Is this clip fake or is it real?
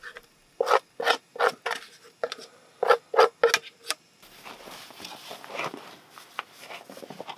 real